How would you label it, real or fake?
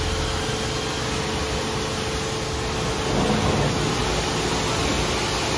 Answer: real